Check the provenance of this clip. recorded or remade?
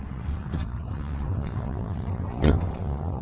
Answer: remade